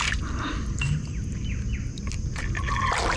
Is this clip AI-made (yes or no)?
no